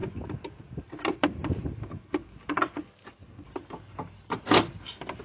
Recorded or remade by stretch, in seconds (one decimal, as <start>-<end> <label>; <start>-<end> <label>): 0.0-5.2 recorded